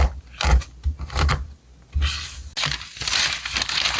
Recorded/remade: recorded